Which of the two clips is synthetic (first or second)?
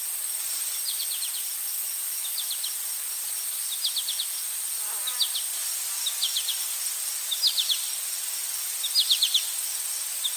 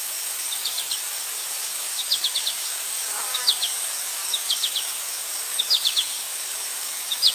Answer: second